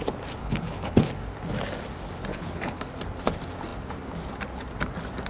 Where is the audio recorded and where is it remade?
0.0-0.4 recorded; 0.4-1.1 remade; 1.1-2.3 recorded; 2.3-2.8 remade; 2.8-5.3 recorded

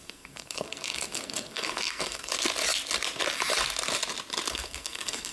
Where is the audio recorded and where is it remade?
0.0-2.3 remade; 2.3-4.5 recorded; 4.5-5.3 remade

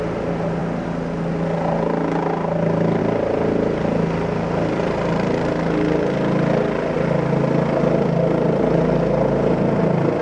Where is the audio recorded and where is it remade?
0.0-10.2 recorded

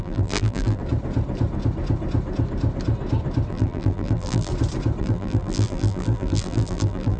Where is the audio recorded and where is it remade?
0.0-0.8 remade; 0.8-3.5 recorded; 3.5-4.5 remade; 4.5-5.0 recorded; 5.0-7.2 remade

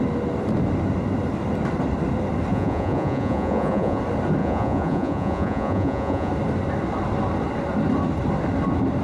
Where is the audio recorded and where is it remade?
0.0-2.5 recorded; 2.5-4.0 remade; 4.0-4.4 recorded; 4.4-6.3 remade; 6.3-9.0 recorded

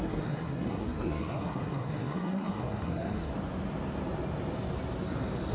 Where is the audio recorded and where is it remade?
0.0-3.3 remade; 3.3-5.5 recorded

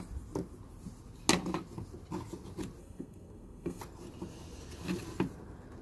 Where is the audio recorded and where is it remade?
0.0-2.8 recorded; 2.8-3.8 remade; 3.8-5.8 recorded